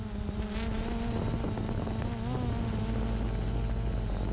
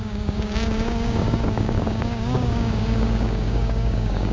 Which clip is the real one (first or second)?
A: first